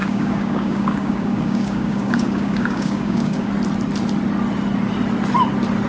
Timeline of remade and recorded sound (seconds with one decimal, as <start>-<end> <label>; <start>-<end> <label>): 0.0-3.5 remade; 3.5-5.9 recorded